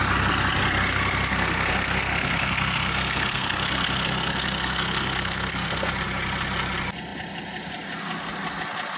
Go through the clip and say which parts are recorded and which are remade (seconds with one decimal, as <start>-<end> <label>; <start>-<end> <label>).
0.0-0.9 recorded; 0.9-5.9 remade; 5.9-9.0 recorded